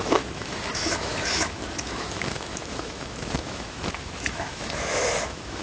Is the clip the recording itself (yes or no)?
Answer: no